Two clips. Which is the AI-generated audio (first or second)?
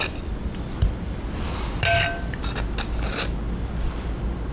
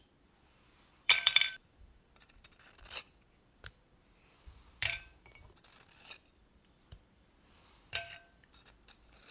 second